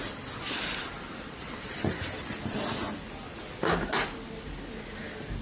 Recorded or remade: recorded